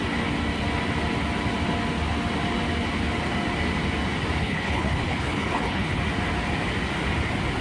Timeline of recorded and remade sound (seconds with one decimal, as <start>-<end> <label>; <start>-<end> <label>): 0.0-4.4 recorded; 4.4-6.0 remade; 6.0-7.6 recorded